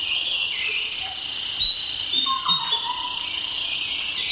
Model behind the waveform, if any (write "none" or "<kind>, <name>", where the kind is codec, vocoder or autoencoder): none